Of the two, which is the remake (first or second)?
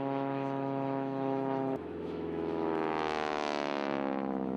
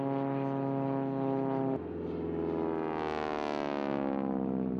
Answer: first